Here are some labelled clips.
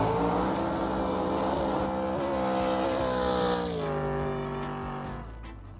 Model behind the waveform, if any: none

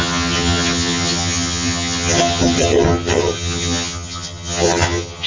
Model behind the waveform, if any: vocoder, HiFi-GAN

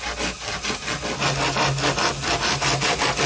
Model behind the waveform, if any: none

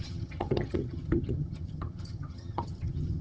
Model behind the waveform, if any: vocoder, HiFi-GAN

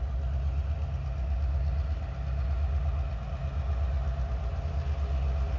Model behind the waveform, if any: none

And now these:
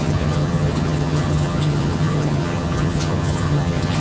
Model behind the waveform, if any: vocoder, HiFi-GAN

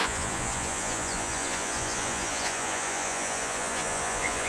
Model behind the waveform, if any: vocoder, Vocos